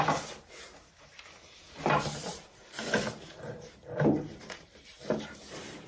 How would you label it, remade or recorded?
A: remade